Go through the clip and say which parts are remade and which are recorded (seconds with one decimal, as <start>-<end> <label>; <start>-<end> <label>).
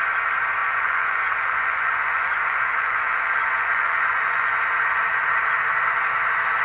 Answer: 0.0-0.6 recorded; 0.6-4.6 remade; 4.6-6.6 recorded